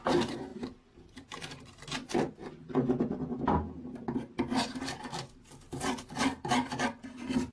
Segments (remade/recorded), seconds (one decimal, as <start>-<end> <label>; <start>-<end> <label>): 0.0-7.5 recorded